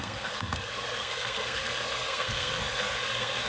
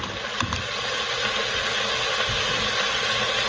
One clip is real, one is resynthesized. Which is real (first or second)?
second